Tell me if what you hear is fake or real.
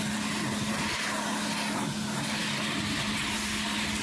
real